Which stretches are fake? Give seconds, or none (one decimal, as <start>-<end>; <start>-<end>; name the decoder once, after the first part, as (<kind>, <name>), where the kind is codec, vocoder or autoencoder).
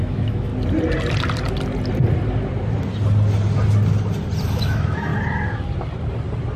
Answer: 0.0-0.5 (autoencoder, DAC-VAE); 4.5-5.1